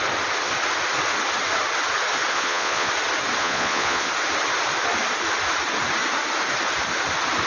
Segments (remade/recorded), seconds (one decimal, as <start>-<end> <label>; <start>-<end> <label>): 0.0-2.3 recorded; 2.3-2.9 remade; 2.9-3.4 recorded; 3.4-4.1 remade; 4.1-7.5 recorded